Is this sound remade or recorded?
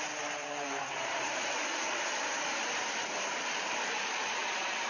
remade